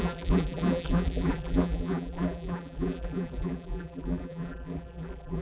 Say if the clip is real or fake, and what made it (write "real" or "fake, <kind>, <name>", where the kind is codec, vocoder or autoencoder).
fake, vocoder, BigVGAN v2